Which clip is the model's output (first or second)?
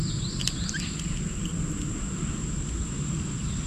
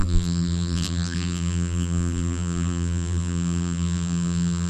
second